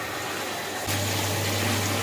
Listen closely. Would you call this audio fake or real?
real